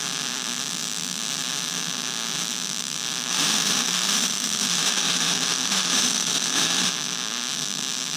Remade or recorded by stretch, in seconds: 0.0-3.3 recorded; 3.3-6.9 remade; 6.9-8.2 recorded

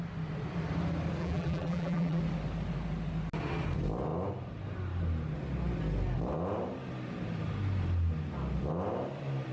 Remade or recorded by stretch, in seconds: 0.0-1.2 recorded; 1.2-2.2 remade; 2.2-9.5 recorded